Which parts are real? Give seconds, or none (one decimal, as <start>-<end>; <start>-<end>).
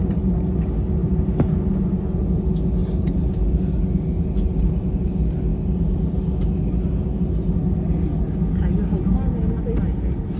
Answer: 0.0-2.8; 3.3-10.4